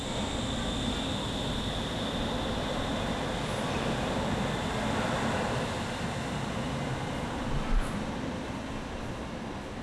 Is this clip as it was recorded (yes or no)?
yes